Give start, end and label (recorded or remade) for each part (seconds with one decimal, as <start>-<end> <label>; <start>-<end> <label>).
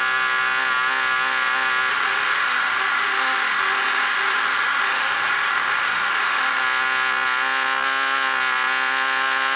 0.0-1.9 recorded; 1.9-6.6 remade; 6.6-9.6 recorded